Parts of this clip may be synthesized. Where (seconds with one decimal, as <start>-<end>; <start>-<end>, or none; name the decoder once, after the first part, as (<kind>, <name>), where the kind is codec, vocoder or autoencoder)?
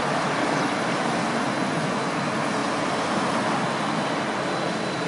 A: 1.6-2.2 (vocoder, Vocos)